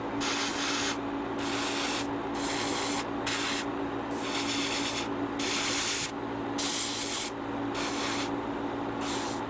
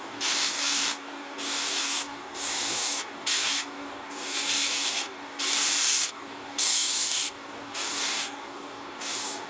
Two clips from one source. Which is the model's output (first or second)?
second